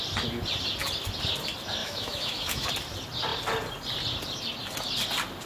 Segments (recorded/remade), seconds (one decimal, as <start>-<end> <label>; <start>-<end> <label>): 0.0-1.8 recorded; 1.8-2.7 remade; 2.7-5.5 recorded

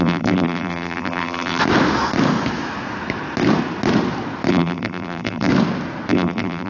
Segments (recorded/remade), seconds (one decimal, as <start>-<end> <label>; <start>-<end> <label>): 0.0-1.6 remade; 1.6-4.5 recorded; 4.5-5.5 remade; 5.5-6.1 recorded; 6.1-6.7 remade